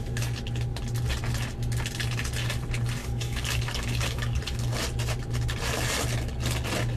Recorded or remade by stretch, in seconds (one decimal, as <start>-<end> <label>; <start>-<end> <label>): 0.0-3.0 recorded; 3.0-4.4 remade; 4.4-7.0 recorded